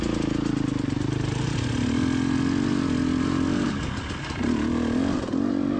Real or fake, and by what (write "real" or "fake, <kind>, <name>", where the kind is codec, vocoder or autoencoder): real